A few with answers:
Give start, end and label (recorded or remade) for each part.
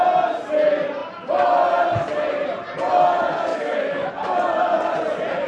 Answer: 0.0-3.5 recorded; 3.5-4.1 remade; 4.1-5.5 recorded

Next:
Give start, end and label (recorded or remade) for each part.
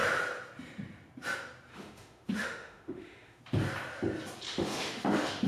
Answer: 0.0-1.7 recorded; 1.7-3.4 remade; 3.4-4.5 recorded; 4.5-5.5 remade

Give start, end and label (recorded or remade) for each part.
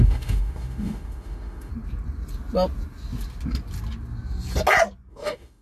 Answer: 0.0-1.7 remade; 1.7-5.1 recorded; 5.1-5.6 remade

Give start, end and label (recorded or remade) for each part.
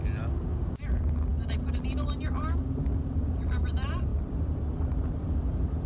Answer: 0.0-5.9 recorded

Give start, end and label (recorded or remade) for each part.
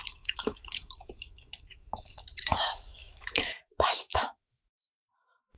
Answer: 0.0-5.6 remade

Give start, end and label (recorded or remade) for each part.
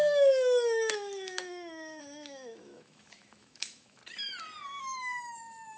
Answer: 0.0-4.0 remade; 4.0-4.8 recorded; 4.8-5.8 remade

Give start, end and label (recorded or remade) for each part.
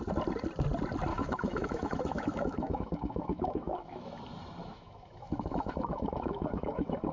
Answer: 0.0-1.1 recorded; 1.1-4.1 remade; 4.1-4.6 recorded; 4.6-7.1 remade